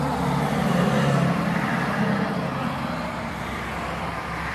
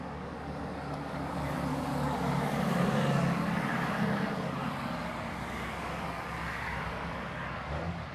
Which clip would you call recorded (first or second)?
first